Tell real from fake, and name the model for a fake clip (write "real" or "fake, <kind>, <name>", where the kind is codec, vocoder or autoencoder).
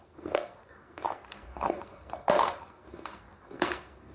fake, codec, SNAC